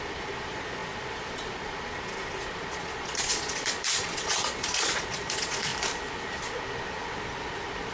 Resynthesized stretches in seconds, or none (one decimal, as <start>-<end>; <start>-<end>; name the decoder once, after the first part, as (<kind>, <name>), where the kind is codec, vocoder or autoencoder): 0.0-5.7 (vocoder, Vocos); 6.3-7.9